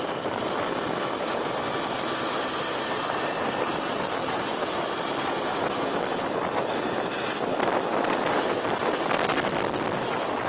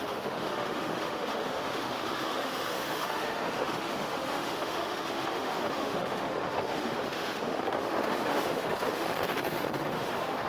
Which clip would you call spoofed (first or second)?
second